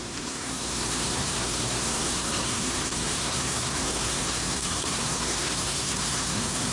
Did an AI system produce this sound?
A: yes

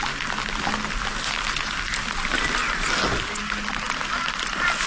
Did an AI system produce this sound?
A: no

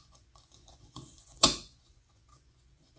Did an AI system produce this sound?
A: yes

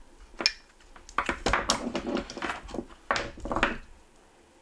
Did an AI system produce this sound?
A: no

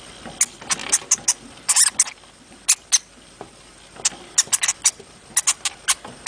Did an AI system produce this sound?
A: no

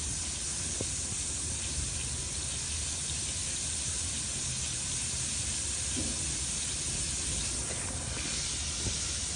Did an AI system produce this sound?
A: no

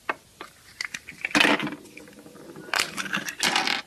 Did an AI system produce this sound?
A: no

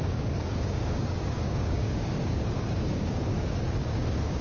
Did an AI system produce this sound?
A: yes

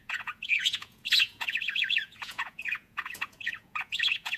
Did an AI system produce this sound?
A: yes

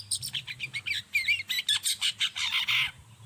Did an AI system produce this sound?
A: no